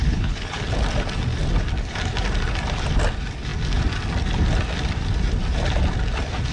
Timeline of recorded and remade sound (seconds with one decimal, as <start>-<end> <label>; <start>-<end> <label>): 0.0-0.6 remade; 0.6-6.5 recorded